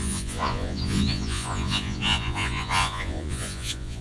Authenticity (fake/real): fake